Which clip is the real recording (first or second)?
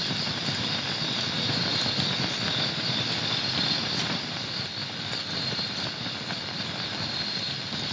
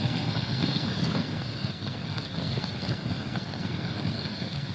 first